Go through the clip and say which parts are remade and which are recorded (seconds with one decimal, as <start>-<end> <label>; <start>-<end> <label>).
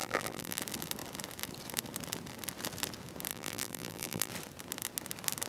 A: 0.0-0.6 remade; 0.6-3.3 recorded; 3.3-4.3 remade; 4.3-5.5 recorded